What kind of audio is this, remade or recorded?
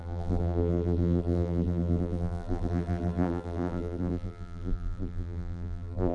remade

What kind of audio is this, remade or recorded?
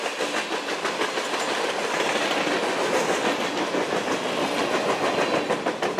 recorded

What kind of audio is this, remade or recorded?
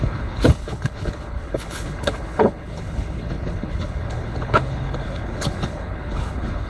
remade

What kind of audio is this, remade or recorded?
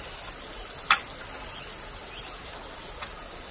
recorded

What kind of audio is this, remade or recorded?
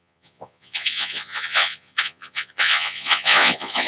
remade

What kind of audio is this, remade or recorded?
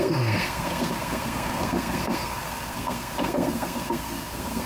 remade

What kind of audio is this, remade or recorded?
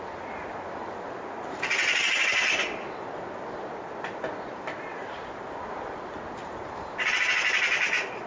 recorded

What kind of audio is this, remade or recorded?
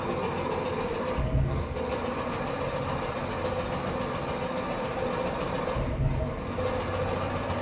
recorded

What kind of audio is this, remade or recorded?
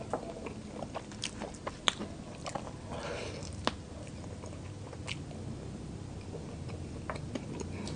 recorded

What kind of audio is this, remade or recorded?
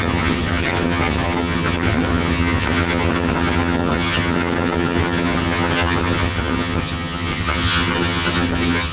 remade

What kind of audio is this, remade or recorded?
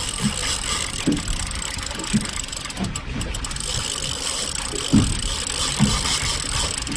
recorded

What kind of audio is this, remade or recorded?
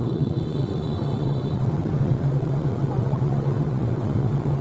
remade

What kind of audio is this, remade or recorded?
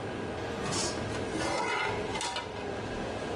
recorded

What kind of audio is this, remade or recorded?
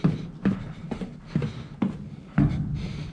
recorded